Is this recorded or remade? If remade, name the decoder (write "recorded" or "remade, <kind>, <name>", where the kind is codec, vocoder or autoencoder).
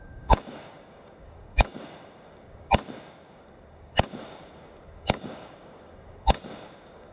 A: remade, codec, DAC